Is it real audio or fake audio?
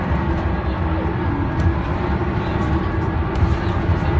real